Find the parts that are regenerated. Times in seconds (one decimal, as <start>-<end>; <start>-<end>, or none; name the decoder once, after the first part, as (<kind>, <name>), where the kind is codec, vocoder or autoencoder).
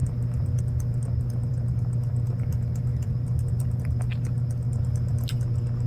0.0-0.6 (vocoder, BigVGAN v2); 2.9-3.8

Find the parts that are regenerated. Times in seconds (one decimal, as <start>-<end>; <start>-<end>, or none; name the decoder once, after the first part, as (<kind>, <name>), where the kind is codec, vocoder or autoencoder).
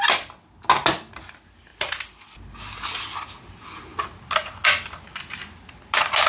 none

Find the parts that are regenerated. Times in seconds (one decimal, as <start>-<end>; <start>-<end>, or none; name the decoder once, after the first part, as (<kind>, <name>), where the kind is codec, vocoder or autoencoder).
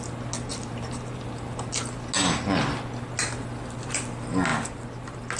0.5-1.7 (vocoder, BigVGAN v2)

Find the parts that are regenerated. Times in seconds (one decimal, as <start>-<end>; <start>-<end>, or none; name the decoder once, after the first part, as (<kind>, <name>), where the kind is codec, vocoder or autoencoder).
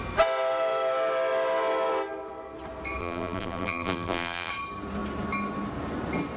3.0-4.5 (vocoder, BigVGAN v2)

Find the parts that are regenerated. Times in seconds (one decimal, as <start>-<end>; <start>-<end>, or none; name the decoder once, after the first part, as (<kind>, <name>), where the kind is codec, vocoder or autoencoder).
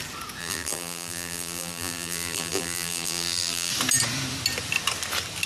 0.4-3.7 (vocoder, BigVGAN v2)